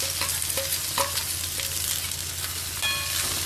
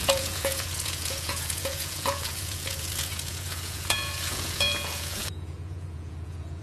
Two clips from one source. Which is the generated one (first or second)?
second